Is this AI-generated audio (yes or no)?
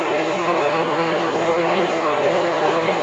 yes